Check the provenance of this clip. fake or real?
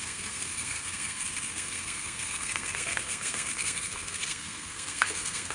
fake